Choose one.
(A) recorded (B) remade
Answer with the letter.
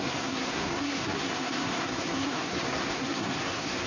B